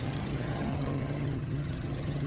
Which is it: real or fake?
fake